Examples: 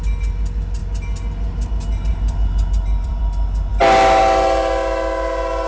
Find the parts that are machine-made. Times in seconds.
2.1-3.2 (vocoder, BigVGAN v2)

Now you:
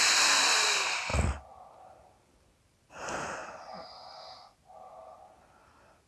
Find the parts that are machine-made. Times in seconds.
none

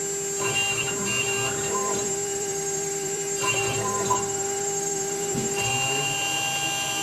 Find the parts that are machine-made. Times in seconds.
1.8-5.7 (vocoder, BigVGAN v2)

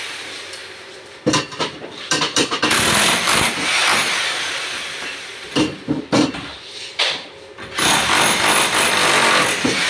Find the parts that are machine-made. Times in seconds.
0.6-3.5 (vocoder, BigVGAN v2)

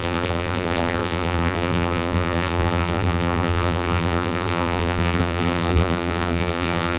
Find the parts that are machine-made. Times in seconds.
0.0-7.0 (vocoder, BigVGAN v2)